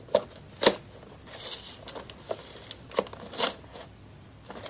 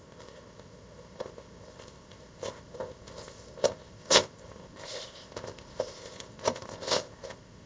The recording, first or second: first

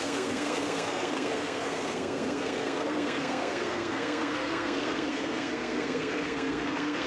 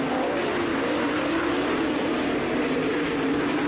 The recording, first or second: second